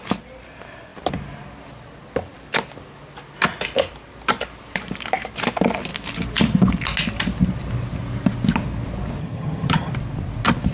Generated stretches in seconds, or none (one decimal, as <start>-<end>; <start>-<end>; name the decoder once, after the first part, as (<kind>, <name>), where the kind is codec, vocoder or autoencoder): 9.2-9.9 (vocoder, HiFi-GAN)